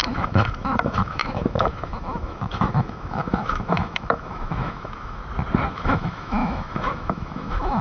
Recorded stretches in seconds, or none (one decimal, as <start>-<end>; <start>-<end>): 5.2-5.7